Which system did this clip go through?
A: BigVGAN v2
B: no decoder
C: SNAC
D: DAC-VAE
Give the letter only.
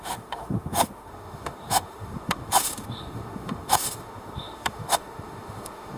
D